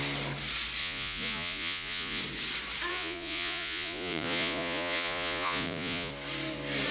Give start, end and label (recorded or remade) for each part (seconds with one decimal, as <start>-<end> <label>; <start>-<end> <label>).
0.0-0.8 recorded; 0.8-2.2 remade; 2.2-2.9 recorded; 2.9-6.1 remade; 6.1-6.9 recorded